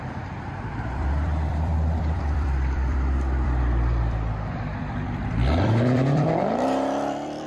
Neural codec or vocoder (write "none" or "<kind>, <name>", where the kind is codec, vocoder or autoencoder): vocoder, BigVGAN v2